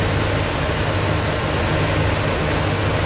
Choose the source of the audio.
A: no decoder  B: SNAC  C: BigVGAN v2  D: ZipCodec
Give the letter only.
A